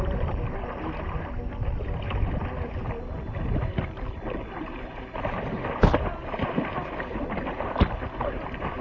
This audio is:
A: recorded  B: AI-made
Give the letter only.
A